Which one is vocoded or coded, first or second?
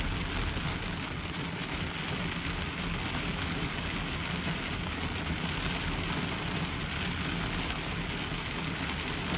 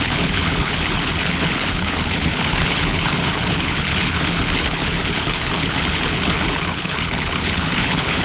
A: second